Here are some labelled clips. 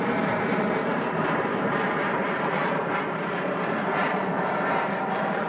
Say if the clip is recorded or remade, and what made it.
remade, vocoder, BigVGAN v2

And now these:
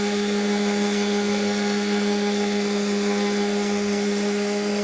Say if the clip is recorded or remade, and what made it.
remade, codec, SNAC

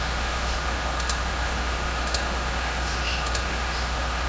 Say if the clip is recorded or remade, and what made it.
remade, autoencoder, DAC-VAE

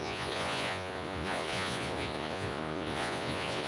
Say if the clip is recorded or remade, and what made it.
remade, vocoder, Vocos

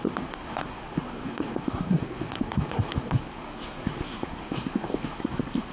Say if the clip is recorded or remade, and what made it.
remade, codec, SNAC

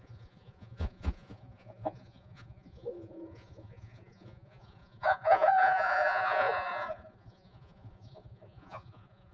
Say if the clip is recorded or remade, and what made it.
remade, vocoder, Vocos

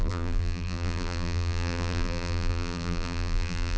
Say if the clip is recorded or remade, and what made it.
remade, vocoder, BigVGAN v2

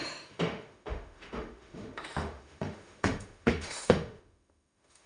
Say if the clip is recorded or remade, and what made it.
remade, autoencoder, DAC-VAE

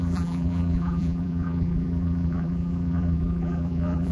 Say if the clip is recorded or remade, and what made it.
remade, vocoder, BigVGAN v2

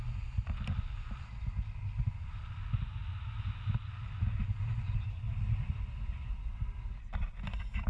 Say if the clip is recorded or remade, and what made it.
recorded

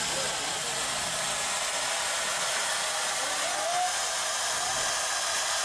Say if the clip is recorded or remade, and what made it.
recorded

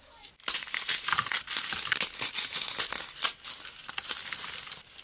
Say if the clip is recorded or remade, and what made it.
recorded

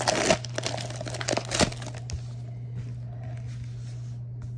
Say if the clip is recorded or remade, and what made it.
recorded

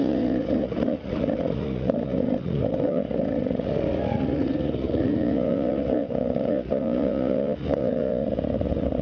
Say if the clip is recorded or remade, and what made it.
remade, vocoder, Vocos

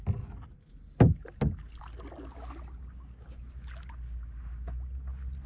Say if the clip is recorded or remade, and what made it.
recorded